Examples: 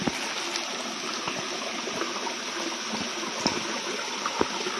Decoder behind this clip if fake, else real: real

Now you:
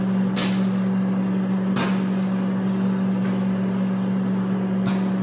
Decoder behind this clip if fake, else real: real